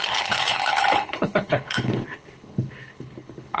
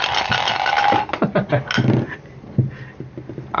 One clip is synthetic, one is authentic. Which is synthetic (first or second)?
first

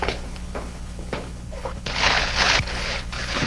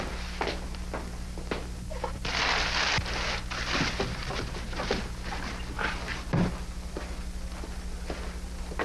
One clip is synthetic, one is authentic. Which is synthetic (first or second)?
first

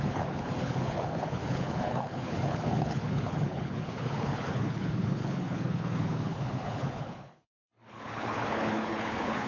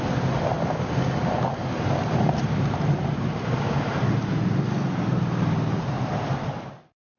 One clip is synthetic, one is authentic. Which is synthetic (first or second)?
first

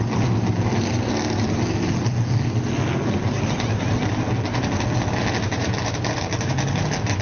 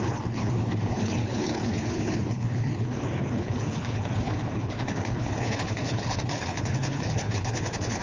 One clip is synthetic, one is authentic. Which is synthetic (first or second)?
second